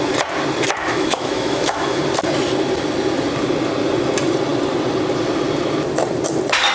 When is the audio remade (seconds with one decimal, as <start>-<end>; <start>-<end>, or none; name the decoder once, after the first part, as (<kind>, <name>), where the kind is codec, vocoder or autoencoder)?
0.8-2.0 (autoencoder, DAC-VAE)